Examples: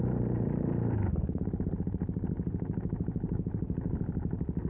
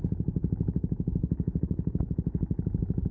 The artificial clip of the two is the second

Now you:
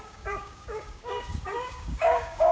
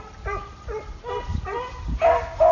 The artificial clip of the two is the first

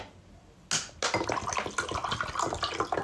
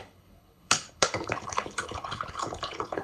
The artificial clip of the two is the second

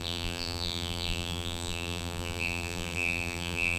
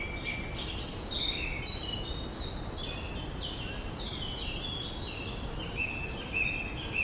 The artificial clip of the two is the first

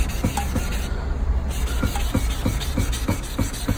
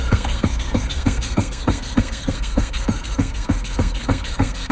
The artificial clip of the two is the second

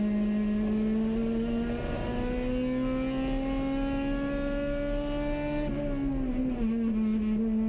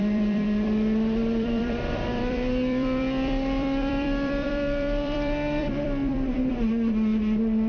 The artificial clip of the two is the second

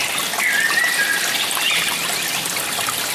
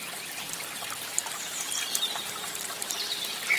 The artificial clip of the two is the second